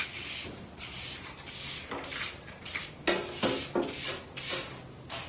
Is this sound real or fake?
real